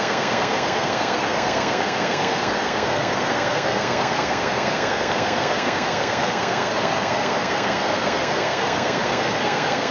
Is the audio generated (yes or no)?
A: yes